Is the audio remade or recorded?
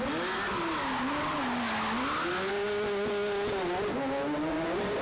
recorded